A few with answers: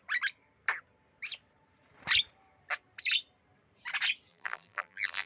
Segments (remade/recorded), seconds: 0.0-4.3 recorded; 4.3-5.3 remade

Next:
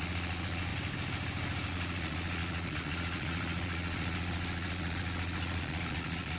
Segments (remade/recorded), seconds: 0.0-0.7 remade; 0.7-1.7 recorded; 1.7-6.4 remade